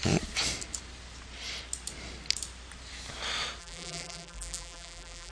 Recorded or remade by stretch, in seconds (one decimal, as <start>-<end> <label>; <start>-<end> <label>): 0.0-3.6 recorded; 3.6-5.3 remade